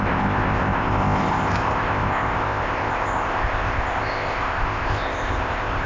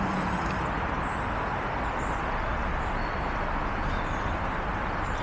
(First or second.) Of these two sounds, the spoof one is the first